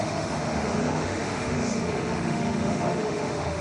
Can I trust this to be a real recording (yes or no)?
no